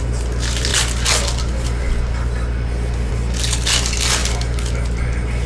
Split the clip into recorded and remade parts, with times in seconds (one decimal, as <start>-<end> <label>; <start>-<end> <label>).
0.0-5.5 recorded